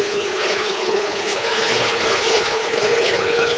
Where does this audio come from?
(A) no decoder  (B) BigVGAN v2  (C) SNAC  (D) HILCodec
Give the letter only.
D